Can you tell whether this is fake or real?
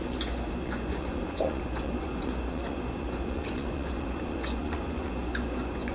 fake